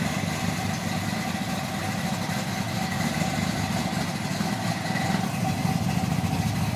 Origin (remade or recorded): recorded